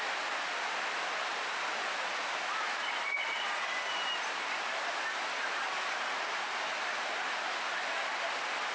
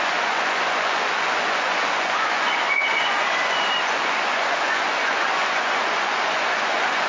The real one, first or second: first